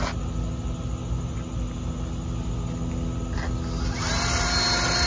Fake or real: real